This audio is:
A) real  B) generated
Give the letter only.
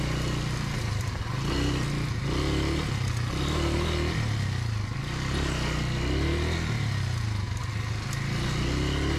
A